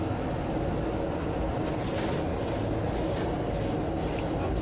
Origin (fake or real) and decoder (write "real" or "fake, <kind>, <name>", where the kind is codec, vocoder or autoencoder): real